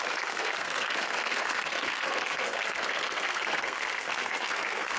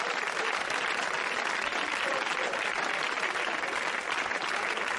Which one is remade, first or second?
first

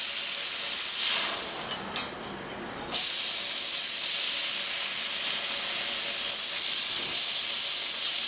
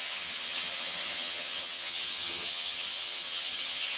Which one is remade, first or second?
second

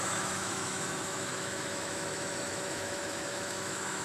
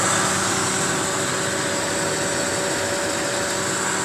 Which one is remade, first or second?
first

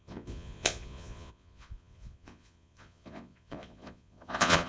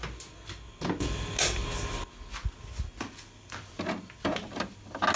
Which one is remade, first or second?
first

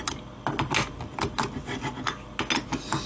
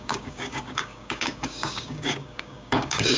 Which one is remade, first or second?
second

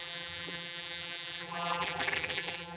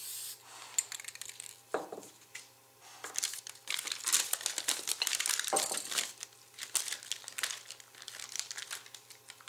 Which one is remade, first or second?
first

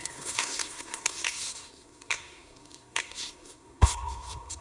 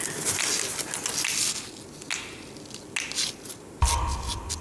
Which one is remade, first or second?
first